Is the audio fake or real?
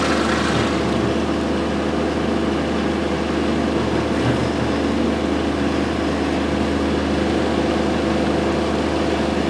real